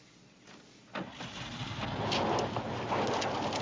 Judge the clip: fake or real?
real